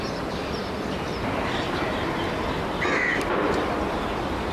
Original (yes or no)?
no